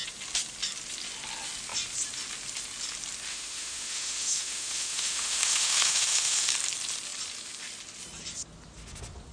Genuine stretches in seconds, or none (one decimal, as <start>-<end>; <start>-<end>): 0.0-3.3; 6.5-9.3